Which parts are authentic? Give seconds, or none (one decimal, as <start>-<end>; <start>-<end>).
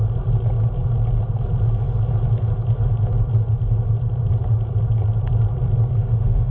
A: 0.0-6.0